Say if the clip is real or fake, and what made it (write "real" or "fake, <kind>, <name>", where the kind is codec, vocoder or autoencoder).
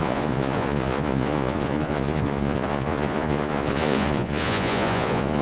fake, vocoder, Vocos